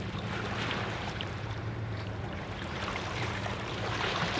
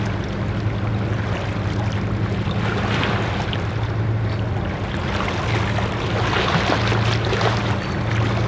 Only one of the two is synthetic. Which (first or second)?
first